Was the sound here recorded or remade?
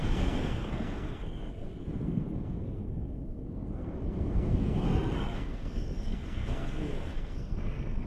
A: remade